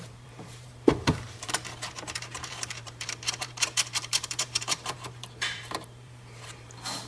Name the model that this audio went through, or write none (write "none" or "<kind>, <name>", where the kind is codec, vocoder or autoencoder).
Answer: vocoder, BigVGAN v2